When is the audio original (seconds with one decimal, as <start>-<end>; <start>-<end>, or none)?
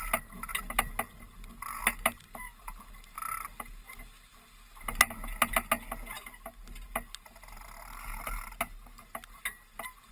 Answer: 0.0-10.1